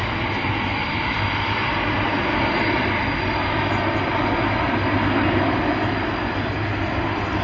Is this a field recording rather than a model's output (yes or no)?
yes